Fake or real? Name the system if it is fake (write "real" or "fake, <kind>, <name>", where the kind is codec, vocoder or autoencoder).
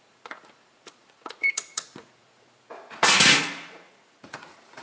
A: fake, vocoder, Vocos